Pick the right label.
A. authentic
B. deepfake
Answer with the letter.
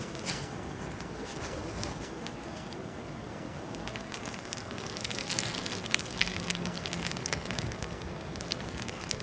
B